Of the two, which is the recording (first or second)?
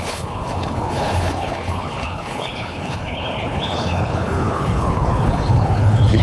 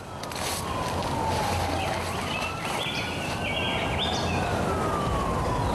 second